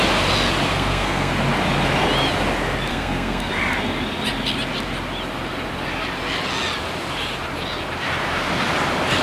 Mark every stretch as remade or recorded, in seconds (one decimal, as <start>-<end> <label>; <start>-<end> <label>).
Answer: 0.0-0.7 recorded; 0.7-1.3 remade; 1.3-2.9 recorded; 2.9-3.5 remade; 3.5-9.2 recorded